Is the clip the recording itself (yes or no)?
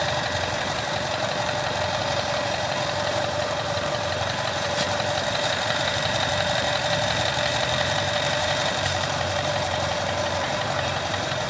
no